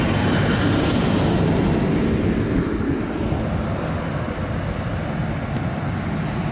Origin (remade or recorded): recorded